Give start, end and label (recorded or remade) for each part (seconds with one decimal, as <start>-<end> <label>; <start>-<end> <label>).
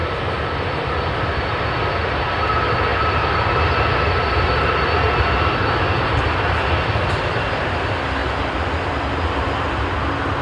0.0-10.4 recorded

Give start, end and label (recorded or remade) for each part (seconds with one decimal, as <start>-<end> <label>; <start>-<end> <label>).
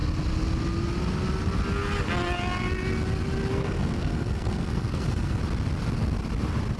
0.0-3.5 recorded; 3.5-5.4 remade; 5.4-6.8 recorded